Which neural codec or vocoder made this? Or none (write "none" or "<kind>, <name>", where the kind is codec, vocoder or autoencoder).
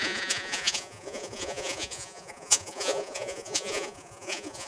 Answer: vocoder, Vocos